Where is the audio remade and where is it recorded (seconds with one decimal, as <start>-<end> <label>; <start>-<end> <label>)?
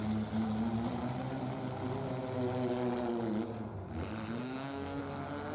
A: 0.0-4.4 recorded; 4.4-5.0 remade; 5.0-5.5 recorded